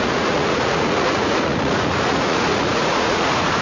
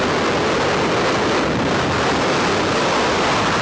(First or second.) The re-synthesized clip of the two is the first